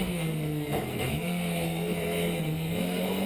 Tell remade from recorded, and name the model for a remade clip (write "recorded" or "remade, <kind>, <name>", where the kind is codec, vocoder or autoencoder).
remade, codec, SNAC